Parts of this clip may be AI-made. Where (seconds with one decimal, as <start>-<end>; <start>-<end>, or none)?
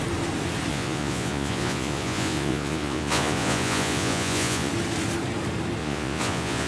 0.7-4.7; 5.8-6.7